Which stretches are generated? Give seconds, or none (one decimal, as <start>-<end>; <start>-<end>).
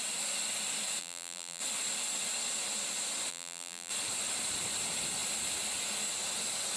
1.0-1.6; 3.3-3.9